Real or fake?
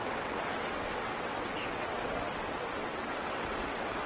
fake